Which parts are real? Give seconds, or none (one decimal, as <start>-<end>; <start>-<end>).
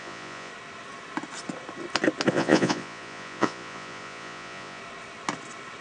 0.5-2.3; 4.8-5.8